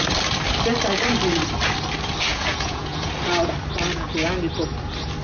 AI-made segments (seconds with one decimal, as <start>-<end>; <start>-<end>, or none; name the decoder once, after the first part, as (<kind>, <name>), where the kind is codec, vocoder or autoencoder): 2.3-3.1 (vocoder, Vocos)